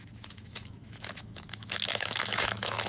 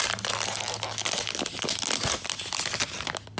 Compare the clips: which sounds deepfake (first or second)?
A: first